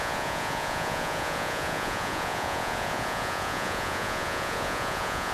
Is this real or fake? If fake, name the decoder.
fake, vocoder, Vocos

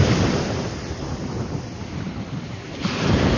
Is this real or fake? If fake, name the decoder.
fake, vocoder, BigVGAN v2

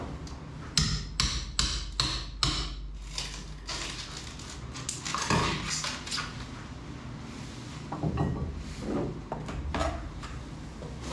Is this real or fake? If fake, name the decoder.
real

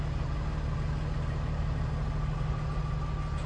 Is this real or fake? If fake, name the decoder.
real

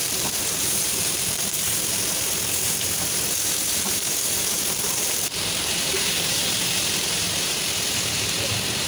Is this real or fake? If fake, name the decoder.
fake, vocoder, BigVGAN v2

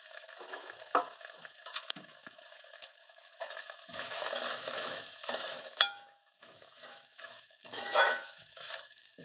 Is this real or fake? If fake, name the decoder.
fake, autoencoder, DAC-VAE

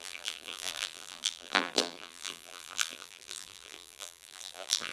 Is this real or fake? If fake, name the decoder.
fake, vocoder, BigVGAN v2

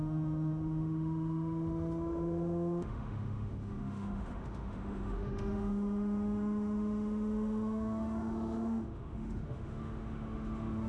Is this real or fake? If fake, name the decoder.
fake, autoencoder, DAC-VAE